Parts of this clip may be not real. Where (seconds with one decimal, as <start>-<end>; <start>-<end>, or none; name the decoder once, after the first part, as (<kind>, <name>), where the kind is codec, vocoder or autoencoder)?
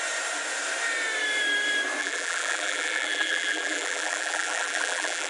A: 2.0-5.3 (vocoder, BigVGAN v2)